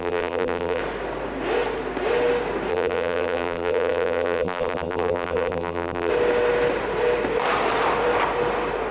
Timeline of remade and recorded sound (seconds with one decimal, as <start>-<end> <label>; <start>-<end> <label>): 0.0-0.8 remade; 0.8-2.7 recorded; 2.7-6.1 remade; 6.1-8.9 recorded